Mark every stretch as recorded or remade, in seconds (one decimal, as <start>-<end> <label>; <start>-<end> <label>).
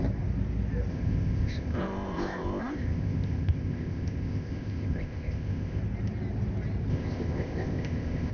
0.0-0.9 recorded; 0.9-5.8 remade; 5.8-6.9 recorded; 6.9-8.3 remade